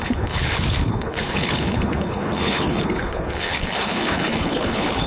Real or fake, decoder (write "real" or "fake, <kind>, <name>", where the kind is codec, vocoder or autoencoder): fake, codec, HILCodec